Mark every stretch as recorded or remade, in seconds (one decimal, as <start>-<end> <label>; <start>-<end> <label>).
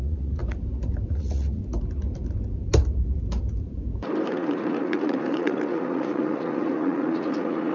0.0-0.4 remade; 0.4-1.1 recorded; 1.1-1.6 remade; 1.6-4.3 recorded; 4.3-7.7 remade